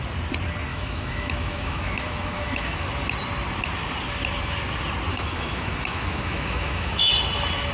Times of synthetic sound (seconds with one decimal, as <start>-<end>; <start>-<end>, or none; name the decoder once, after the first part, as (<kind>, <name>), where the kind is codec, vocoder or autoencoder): 0.7-2.9 (autoencoder, DAC-VAE); 5.1-7.1